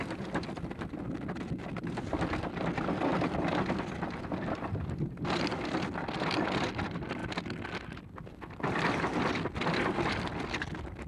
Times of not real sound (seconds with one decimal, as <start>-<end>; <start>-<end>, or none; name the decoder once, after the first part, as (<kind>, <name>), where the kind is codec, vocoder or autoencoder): none